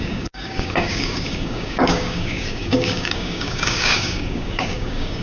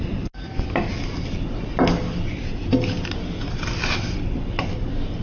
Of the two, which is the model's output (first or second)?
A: first